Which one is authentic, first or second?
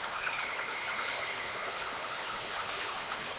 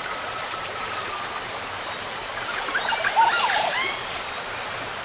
second